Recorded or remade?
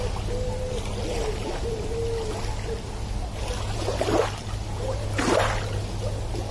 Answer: recorded